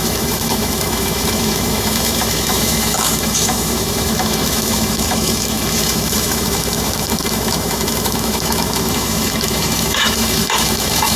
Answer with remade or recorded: remade